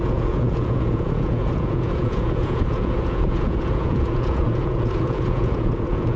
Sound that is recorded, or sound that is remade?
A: remade